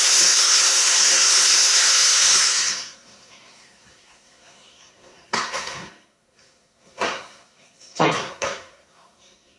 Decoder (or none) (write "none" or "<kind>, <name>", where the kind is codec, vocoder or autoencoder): codec, SNAC